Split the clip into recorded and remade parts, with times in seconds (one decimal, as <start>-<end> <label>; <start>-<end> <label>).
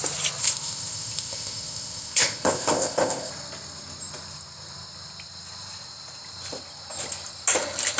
0.0-0.4 recorded; 0.4-3.3 remade; 3.3-8.0 recorded